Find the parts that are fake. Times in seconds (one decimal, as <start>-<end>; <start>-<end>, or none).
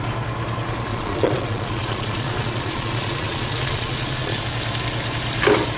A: 0.9-4.4